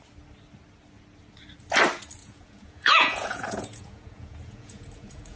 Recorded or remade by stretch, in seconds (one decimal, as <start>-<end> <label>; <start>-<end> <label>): 0.0-2.2 recorded; 2.2-5.4 remade